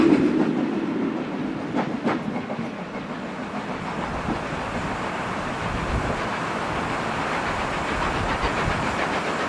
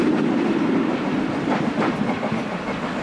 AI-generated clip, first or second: second